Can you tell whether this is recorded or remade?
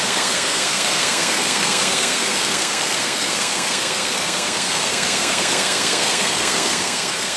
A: remade